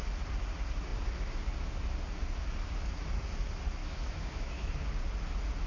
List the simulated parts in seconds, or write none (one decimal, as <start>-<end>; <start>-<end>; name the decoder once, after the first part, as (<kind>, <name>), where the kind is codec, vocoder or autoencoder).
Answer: 3.8-4.7 (autoencoder, DAC-VAE)